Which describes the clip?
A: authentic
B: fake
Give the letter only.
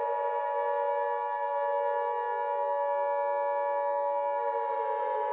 A